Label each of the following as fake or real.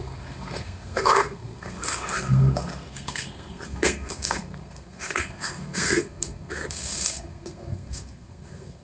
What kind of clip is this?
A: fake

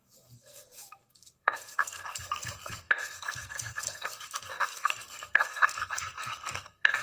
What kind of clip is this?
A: fake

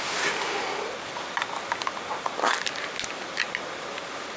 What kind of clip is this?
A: real